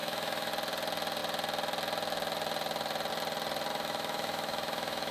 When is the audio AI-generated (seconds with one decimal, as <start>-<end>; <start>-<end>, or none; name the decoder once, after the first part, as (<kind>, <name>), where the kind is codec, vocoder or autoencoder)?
0.0-0.5 (autoencoder, DAC-VAE); 3.7-5.1